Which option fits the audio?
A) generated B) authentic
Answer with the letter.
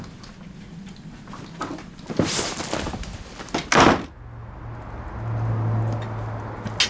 B